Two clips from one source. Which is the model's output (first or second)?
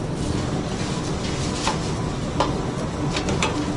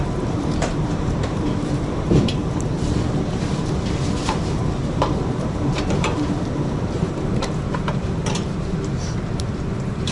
second